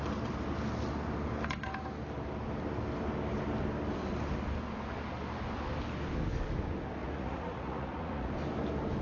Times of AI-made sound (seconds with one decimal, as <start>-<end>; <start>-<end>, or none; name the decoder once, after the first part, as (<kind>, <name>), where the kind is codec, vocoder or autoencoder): 7.0-8.3 (vocoder, Vocos)